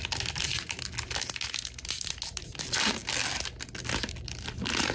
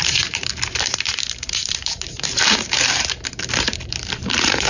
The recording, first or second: first